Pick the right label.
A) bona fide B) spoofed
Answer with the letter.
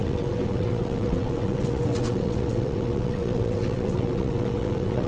B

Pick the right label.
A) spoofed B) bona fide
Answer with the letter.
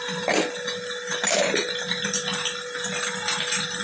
B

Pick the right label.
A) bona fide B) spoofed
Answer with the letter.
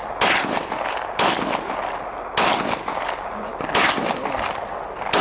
A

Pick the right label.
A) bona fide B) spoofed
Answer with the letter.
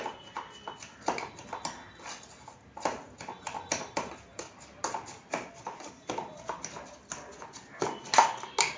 A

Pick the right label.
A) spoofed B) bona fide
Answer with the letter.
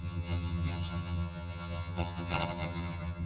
A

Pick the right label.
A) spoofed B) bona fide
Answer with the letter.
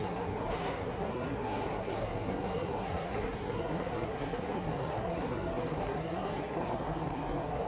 A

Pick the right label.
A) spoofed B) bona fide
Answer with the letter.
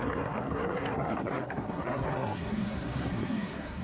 A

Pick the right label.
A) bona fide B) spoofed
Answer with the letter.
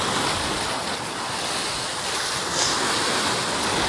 A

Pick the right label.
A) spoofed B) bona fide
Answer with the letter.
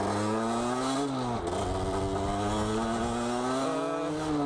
B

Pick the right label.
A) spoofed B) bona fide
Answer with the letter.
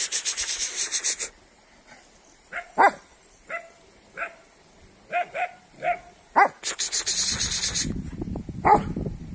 B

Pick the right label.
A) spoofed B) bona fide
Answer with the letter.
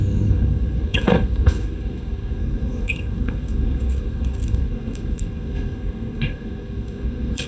A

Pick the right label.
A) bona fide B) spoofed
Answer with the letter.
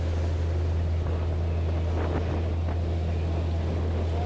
A